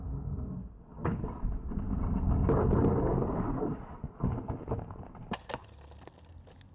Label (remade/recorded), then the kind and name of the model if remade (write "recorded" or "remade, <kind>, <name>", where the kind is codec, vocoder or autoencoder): recorded